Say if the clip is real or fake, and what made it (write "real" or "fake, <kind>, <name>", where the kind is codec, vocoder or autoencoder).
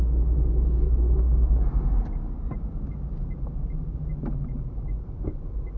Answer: real